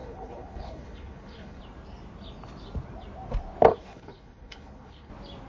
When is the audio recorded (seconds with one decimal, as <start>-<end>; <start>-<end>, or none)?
1.6-3.7; 5.1-5.5

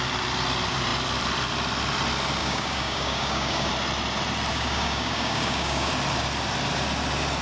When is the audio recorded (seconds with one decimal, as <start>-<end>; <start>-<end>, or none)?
0.0-2.4; 3.7-4.5; 5.9-7.4

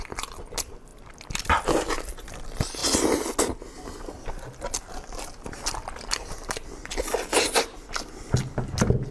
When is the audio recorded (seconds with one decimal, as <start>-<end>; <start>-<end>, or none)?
0.0-9.1

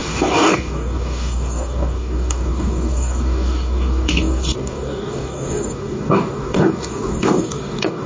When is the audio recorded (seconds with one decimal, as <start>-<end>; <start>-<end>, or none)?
none

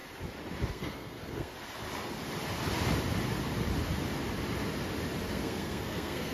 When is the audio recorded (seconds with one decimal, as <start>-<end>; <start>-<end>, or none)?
0.0-0.7; 1.5-5.3

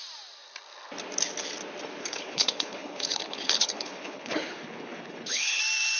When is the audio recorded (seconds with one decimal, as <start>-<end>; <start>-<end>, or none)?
0.0-2.0; 5.6-6.0

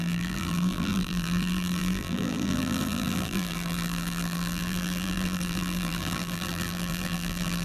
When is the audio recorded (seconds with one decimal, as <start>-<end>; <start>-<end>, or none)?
none

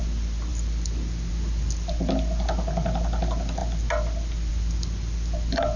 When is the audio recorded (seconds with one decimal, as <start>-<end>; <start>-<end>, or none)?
0.0-5.8